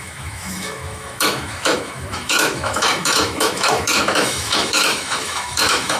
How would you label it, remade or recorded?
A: remade